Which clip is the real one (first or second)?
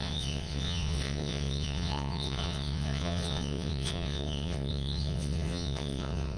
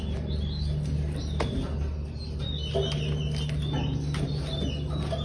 second